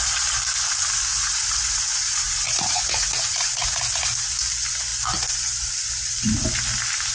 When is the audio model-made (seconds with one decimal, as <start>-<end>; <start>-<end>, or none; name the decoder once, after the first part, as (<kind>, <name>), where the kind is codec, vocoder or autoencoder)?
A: 1.1-3.8 (vocoder, Vocos)